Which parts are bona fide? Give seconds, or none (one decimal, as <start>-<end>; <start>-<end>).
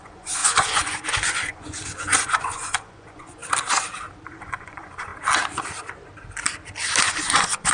3.4-4.4; 5.1-7.0